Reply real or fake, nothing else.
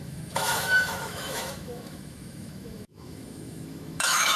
fake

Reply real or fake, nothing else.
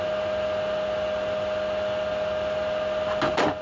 real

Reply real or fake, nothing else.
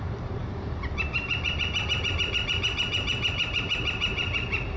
fake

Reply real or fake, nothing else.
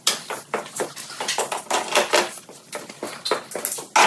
real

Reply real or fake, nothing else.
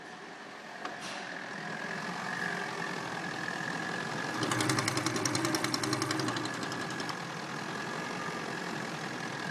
real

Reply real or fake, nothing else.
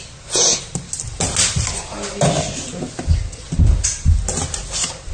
real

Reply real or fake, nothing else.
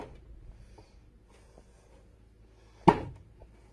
real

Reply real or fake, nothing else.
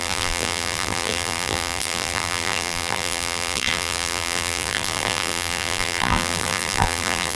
fake